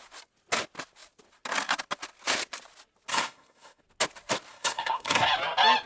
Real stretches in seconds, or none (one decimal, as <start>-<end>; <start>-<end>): 0.0-3.1; 3.8-4.5; 5.3-5.9